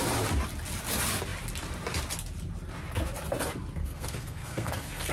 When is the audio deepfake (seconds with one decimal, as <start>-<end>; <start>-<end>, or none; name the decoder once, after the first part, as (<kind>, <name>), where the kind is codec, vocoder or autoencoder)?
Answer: 3.8-5.1 (codec, SNAC)

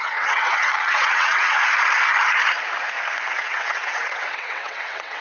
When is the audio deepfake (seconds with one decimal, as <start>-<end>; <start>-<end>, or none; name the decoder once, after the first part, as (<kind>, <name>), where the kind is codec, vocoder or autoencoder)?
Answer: 0.0-1.6 (vocoder, WaveNeXt); 3.3-5.2